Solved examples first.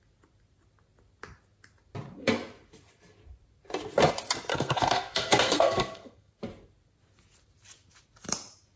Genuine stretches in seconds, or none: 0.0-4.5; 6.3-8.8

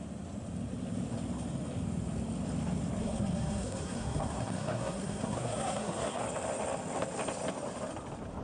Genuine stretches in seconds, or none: 0.0-3.0; 6.2-8.4

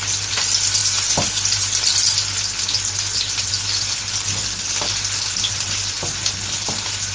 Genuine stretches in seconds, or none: 0.0-7.1